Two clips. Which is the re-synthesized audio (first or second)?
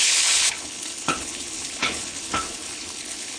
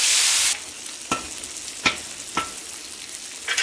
first